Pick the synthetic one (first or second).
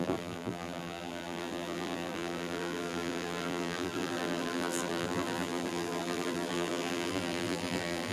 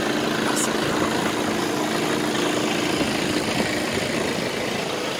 first